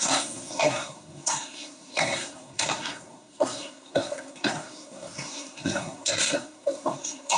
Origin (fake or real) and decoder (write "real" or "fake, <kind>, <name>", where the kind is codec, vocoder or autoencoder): fake, codec, SNAC